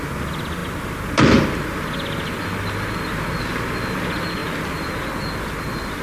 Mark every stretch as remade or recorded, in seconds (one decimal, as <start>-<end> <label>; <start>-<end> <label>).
0.0-6.0 recorded